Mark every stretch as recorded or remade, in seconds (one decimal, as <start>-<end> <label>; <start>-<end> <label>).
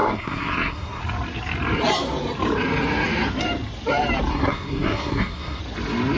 0.0-1.0 remade; 1.0-4.3 recorded; 4.3-5.6 remade; 5.6-6.2 recorded